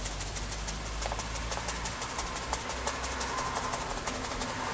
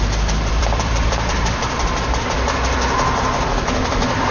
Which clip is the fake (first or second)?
second